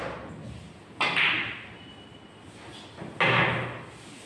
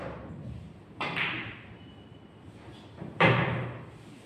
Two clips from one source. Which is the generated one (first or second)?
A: second